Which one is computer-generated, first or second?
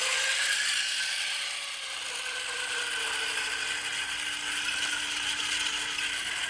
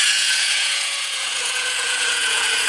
second